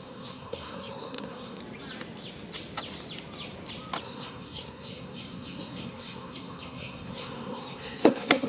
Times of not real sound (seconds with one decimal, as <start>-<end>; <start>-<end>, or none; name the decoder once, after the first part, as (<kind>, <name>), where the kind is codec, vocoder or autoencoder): 0.0-1.6 (codec, SNAC); 4.0-8.5